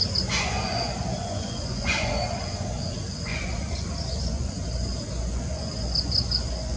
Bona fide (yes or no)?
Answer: no